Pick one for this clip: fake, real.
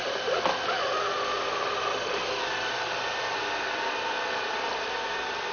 real